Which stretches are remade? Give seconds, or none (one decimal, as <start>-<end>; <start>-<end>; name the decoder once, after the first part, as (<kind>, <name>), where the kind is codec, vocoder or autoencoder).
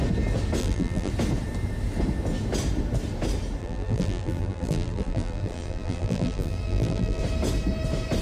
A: 0.6-1.1 (vocoder, BigVGAN v2); 3.6-7.2